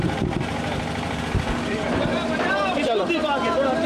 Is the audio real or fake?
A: fake